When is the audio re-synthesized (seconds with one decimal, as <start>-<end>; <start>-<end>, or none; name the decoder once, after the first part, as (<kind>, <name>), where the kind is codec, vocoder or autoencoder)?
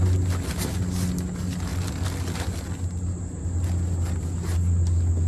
none